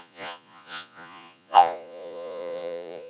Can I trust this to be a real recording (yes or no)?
no